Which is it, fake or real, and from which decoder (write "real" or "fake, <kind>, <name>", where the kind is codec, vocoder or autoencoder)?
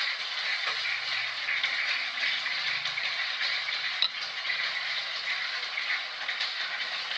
real